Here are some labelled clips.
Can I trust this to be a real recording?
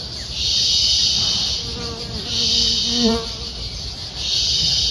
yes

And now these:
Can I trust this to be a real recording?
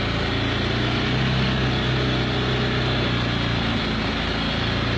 yes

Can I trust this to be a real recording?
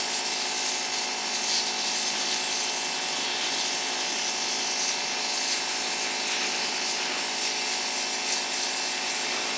yes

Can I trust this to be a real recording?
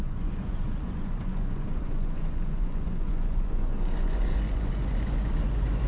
no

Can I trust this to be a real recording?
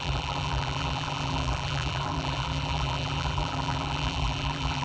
no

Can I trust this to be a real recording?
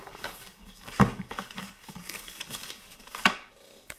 no